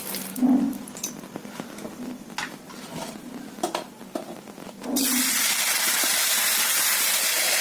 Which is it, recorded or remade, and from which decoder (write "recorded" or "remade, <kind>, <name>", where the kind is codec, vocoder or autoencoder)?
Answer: recorded